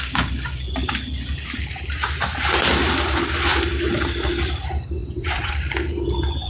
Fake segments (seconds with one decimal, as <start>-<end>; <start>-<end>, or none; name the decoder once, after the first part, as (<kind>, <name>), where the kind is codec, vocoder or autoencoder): 5.0-5.5 (vocoder, WaveNeXt)